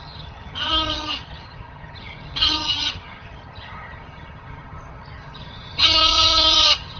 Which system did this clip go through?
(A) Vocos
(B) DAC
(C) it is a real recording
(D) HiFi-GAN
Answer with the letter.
D